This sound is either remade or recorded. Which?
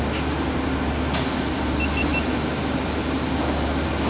recorded